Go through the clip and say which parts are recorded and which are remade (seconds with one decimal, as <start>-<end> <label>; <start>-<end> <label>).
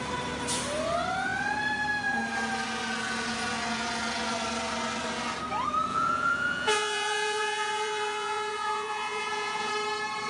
0.0-5.9 recorded; 5.9-9.7 remade; 9.7-10.3 recorded